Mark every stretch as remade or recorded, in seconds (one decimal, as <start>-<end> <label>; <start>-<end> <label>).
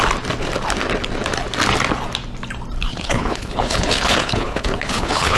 0.0-2.9 recorded; 2.9-5.4 remade